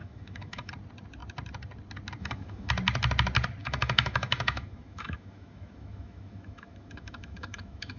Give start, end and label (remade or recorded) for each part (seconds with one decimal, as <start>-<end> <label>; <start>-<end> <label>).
0.0-0.7 remade; 0.7-2.2 recorded; 2.2-2.7 remade; 2.7-3.6 recorded; 3.6-8.0 remade